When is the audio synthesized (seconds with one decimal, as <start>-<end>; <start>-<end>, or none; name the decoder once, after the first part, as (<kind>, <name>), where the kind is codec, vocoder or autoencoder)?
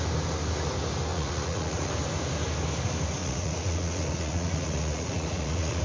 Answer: 1.1-1.9 (vocoder, Vocos); 3.2-5.8